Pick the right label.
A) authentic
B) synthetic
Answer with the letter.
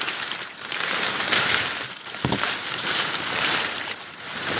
B